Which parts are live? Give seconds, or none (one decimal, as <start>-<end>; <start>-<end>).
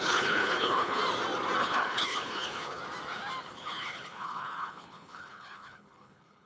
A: 1.0-1.6; 2.8-3.4